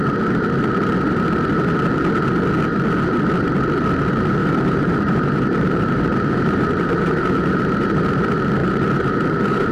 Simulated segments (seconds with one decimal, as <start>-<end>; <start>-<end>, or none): 4.4-8.0; 8.6-9.7